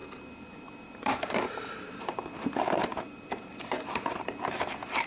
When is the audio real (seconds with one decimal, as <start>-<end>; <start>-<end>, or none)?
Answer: 2.0-2.9; 3.5-5.1